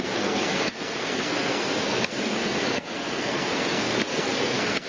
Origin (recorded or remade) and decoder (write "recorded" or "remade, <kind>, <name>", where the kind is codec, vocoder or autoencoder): remade, codec, SNAC